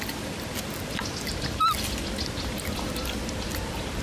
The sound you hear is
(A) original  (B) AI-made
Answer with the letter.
A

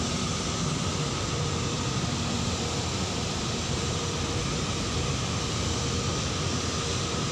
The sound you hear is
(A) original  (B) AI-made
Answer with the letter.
B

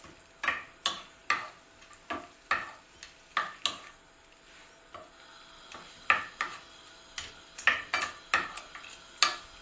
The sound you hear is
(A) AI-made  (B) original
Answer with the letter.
B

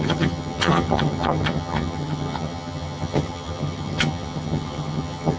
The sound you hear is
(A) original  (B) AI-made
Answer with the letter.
B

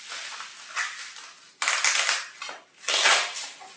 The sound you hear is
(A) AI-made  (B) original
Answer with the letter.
B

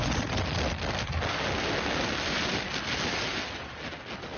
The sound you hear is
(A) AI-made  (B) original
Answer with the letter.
B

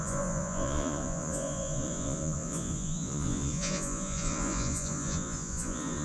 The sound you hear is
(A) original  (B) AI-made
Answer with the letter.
B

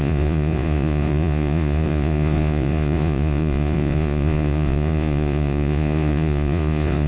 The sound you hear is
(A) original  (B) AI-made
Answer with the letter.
B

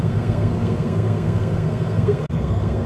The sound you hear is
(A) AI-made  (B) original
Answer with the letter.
A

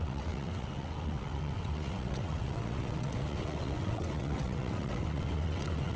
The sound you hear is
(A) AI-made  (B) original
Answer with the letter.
A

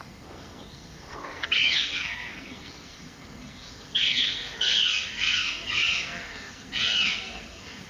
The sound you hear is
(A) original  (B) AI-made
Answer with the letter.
B